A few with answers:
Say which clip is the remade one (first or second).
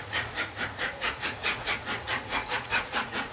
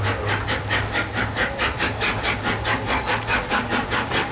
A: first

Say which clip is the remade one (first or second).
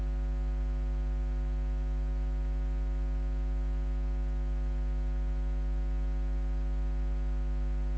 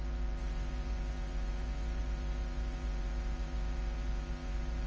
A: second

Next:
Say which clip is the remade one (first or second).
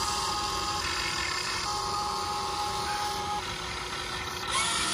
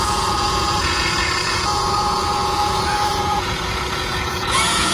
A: second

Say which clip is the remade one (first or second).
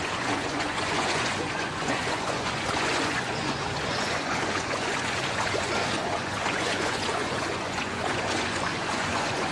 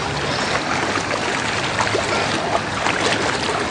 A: first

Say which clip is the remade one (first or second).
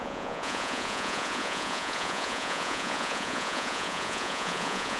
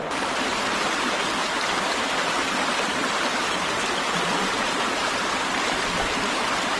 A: first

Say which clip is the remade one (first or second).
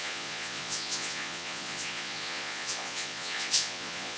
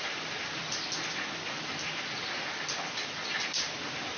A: first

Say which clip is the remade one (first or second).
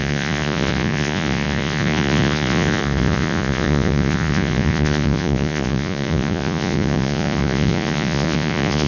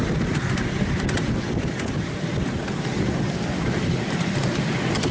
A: first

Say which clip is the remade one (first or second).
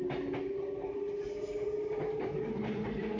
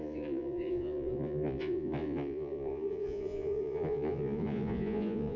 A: second